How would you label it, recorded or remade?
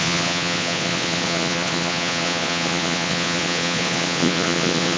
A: remade